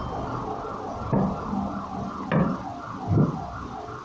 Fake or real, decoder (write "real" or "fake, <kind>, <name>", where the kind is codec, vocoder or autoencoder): real